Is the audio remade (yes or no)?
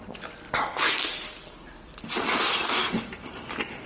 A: no